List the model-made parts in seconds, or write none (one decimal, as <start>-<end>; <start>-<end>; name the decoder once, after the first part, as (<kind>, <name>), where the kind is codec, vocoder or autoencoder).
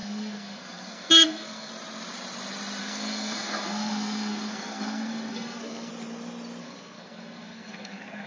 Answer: 0.0-1.7 (codec, SNAC); 2.8-5.9; 6.6-8.3